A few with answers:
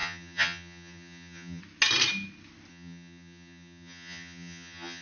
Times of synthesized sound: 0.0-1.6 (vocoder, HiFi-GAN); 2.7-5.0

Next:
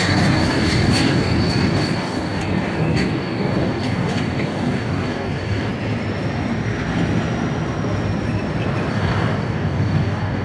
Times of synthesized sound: 0.0-5.7 (codec, DAC); 8.9-10.4

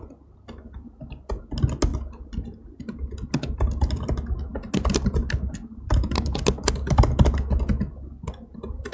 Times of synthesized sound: none

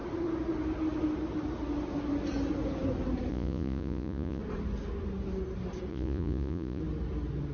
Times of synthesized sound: 3.3-4.4 (vocoder, Vocos); 5.9-6.8